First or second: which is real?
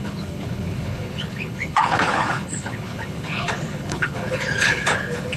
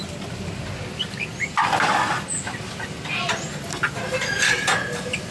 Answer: second